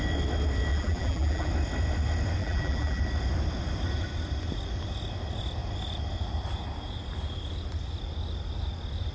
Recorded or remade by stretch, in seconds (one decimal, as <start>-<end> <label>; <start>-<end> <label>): 0.0-0.7 recorded; 0.7-1.5 remade; 1.5-2.4 recorded; 2.4-3.0 remade; 3.0-9.1 recorded